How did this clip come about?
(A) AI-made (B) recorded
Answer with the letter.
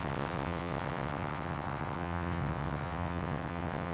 A